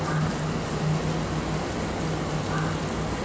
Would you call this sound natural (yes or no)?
yes